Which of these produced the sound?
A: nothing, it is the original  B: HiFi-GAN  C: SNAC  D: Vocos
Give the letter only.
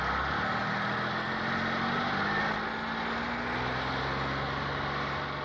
A